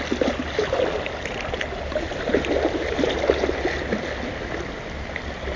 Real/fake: real